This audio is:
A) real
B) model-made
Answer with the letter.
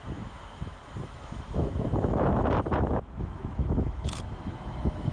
B